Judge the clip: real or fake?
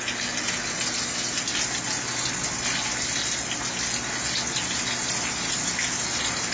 real